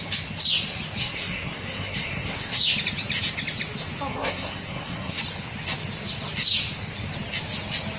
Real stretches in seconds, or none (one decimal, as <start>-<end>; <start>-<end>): 0.0-1.0; 2.6-4.1; 5.2-8.0